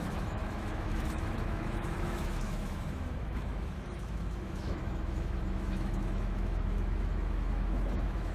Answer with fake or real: fake